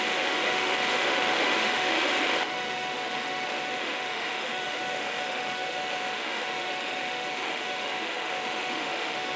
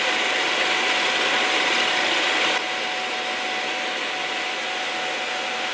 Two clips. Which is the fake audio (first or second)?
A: first